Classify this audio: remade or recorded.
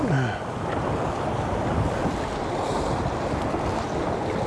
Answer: recorded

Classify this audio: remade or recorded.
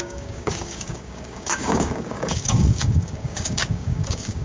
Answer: remade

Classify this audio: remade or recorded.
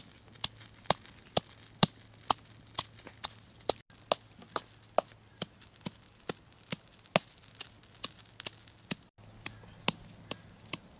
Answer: recorded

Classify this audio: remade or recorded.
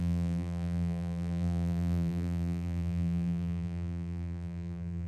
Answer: remade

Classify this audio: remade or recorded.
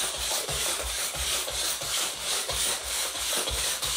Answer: remade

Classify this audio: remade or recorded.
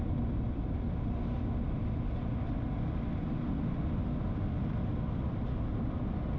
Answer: recorded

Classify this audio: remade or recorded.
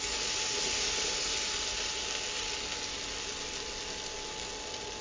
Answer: recorded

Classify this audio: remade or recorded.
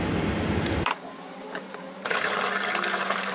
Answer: remade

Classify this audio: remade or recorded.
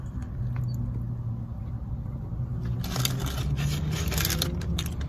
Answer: recorded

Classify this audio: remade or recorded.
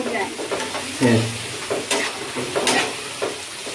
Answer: recorded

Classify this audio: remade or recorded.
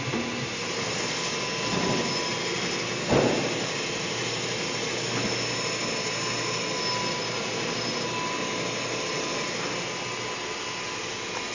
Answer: recorded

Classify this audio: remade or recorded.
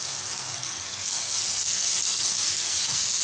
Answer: remade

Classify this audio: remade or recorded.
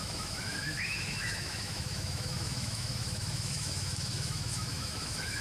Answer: remade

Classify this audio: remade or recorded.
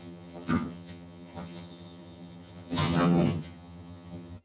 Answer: remade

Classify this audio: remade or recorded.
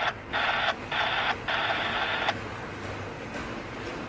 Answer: recorded